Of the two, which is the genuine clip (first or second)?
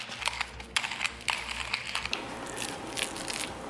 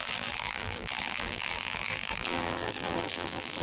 first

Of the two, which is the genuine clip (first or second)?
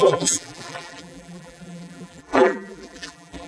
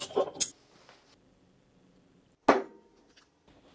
second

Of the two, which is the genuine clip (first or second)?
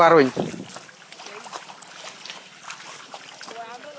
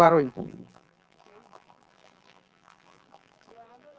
first